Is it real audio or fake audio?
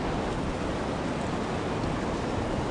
real